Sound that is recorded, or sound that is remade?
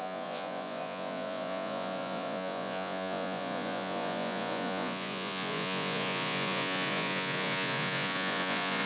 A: remade